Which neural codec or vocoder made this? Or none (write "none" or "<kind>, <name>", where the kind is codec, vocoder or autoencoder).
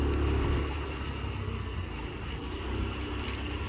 none